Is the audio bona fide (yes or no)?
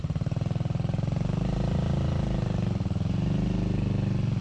yes